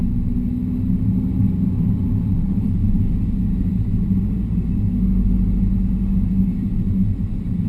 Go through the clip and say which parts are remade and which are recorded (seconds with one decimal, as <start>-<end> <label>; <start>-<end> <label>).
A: 0.0-2.4 recorded; 2.4-2.8 remade; 2.8-7.7 recorded